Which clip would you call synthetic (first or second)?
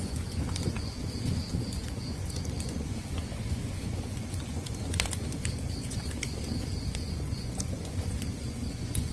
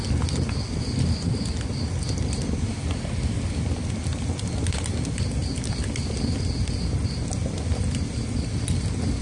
first